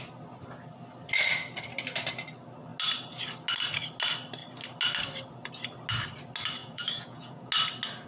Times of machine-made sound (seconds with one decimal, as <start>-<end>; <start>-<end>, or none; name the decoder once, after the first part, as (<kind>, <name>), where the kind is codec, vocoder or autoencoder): 6.6-7.5 (vocoder, Vocos)

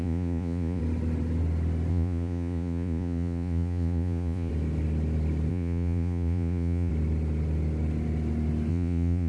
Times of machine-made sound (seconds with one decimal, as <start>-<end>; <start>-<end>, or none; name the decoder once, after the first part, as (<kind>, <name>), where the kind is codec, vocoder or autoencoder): 0.0-0.8 (vocoder, Vocos); 1.9-4.5; 5.5-6.9; 8.7-9.3